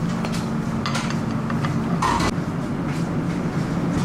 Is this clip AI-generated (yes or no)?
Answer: no